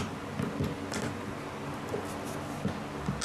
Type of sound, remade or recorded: recorded